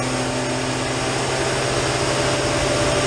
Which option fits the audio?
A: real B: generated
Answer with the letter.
A